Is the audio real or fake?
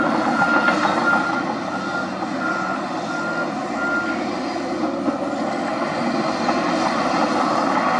real